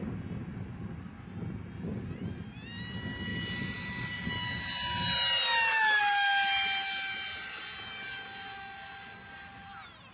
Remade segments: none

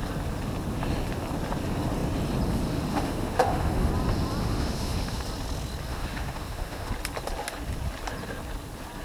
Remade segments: 2.9-3.9 (autoencoder, DAC-VAE); 4.4-5.2; 5.9-6.9